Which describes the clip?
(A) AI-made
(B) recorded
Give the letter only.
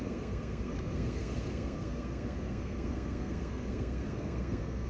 A